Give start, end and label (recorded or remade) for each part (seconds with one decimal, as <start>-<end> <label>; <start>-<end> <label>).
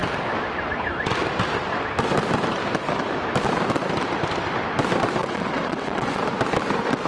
0.0-5.2 recorded; 5.2-6.2 remade; 6.2-7.1 recorded